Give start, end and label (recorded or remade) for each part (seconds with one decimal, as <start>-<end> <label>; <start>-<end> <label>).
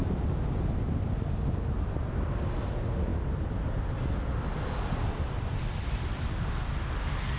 0.0-7.4 recorded